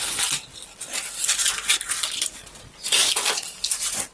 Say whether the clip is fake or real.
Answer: real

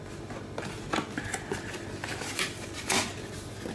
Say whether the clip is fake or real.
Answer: real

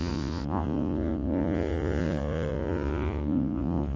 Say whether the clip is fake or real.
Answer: fake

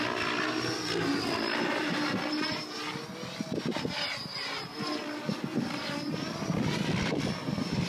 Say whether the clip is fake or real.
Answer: real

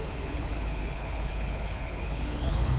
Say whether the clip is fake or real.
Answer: fake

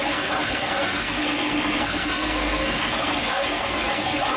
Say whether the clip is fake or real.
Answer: fake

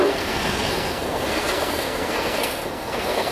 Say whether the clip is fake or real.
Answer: fake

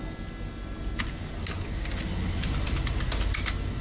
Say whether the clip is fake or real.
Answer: real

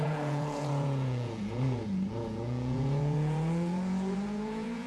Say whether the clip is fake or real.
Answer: fake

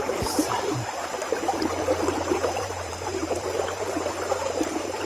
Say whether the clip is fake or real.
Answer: fake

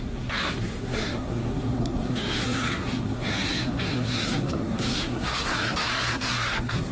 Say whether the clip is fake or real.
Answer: fake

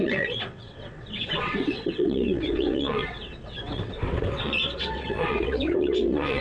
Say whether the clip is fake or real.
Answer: fake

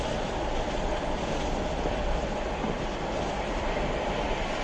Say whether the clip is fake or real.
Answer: fake